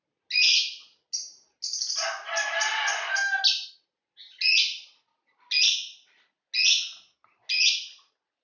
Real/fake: real